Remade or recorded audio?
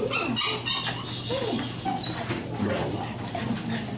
recorded